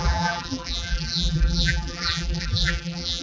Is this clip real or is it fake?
fake